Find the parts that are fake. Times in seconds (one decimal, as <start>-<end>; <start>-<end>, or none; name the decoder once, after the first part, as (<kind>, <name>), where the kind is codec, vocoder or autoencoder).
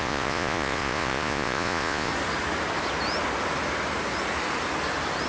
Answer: 0.0-2.1 (vocoder, Vocos)